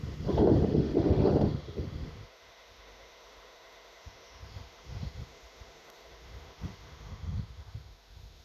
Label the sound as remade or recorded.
remade